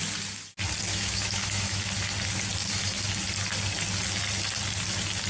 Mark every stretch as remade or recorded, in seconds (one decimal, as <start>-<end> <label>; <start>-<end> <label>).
0.0-0.9 recorded; 0.9-1.8 remade; 1.8-2.6 recorded; 2.6-3.1 remade; 3.1-5.3 recorded